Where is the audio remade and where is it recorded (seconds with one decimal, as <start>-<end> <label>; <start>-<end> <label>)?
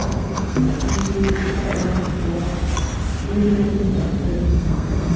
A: 0.0-0.6 remade; 0.6-4.5 recorded; 4.5-5.2 remade